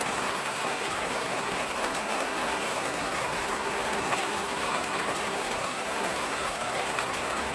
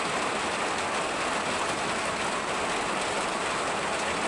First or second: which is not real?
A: first